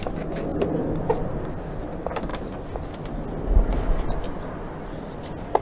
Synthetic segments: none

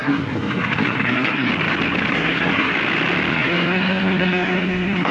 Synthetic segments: 0.0-1.5 (codec, SNAC); 2.1-2.7; 3.3-5.1

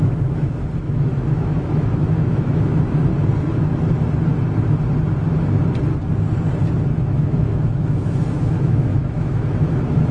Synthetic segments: 0.0-3.1 (autoencoder, DAC-VAE); 7.0-10.1

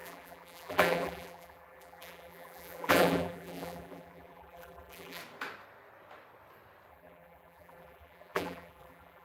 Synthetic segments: 0.0-5.2 (vocoder, BigVGAN v2); 6.9-9.2

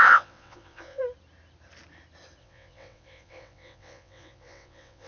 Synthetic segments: 0.0-1.0 (vocoder, WaveNeXt); 2.4-5.1

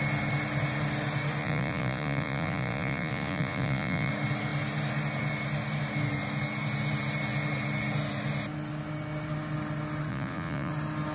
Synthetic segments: 1.4-4.1 (vocoder, Vocos); 10.1-10.7